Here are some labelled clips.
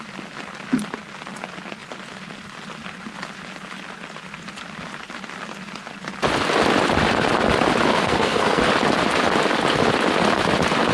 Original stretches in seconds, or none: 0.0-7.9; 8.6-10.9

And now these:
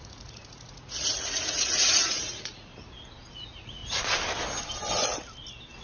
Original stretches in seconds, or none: 2.7-3.3; 3.8-5.8

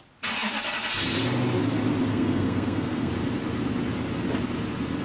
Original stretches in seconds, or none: 0.0-2.1; 3.1-5.0

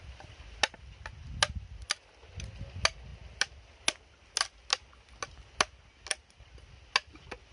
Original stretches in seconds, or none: 0.0-7.5

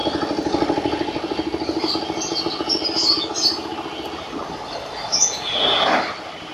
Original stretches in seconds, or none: 0.0-6.5

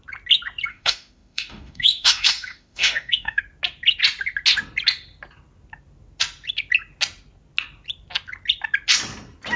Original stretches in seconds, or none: 0.0-0.7; 3.4-9.6

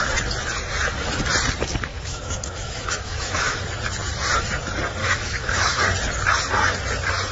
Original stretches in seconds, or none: 0.0-1.9; 3.6-5.0; 5.8-7.3